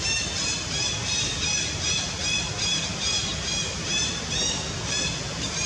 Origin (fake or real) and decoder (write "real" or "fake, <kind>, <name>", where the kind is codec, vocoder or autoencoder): real